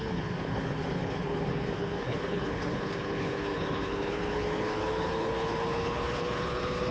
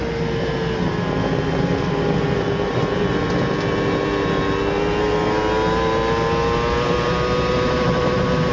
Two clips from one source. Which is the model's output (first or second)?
first